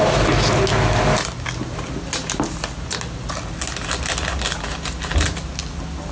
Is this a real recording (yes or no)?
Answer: yes